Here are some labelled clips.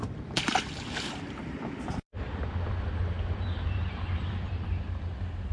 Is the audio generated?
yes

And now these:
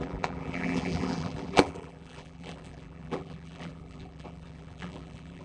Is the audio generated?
yes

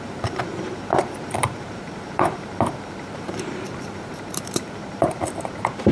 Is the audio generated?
yes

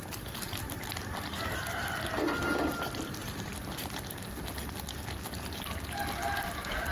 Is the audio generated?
yes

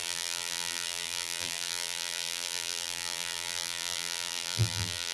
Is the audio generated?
yes